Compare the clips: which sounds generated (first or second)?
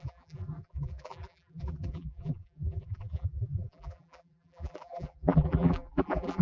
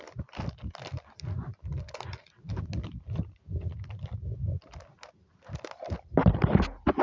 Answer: first